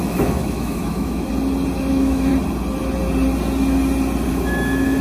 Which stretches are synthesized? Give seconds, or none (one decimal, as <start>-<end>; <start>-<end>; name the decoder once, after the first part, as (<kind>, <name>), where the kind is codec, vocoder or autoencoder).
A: 0.0-1.3 (autoencoder, DAC-VAE); 1.9-2.3; 4.3-5.0